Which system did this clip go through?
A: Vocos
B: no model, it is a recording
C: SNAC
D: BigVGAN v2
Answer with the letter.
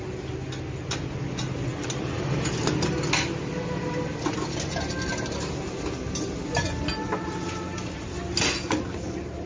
B